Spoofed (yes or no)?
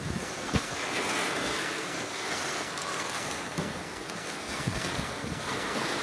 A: yes